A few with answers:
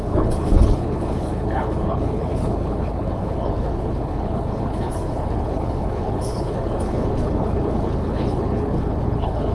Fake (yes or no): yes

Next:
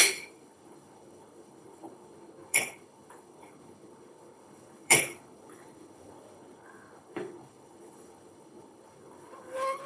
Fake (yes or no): yes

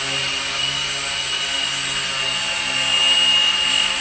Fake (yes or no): no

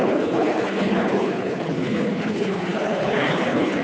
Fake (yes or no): yes